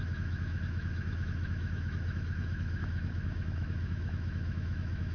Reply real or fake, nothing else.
fake